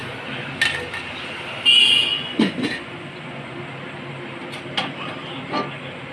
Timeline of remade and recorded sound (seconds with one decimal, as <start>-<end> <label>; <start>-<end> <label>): 0.0-2.1 recorded; 2.1-3.6 remade; 3.6-6.1 recorded